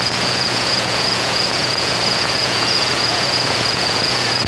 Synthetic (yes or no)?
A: yes